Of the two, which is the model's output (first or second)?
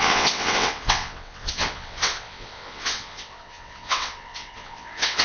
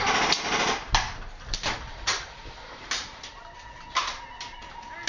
first